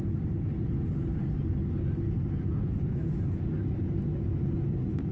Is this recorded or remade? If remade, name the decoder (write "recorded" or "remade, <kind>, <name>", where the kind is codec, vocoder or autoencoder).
recorded